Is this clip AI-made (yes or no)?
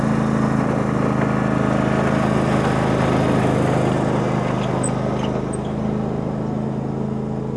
no